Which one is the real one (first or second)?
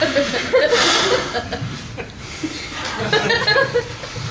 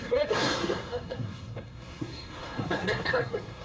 first